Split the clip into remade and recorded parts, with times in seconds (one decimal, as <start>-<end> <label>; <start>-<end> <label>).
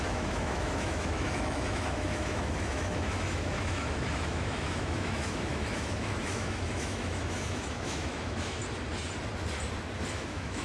0.0-8.6 remade; 8.6-10.1 recorded; 10.1-10.6 remade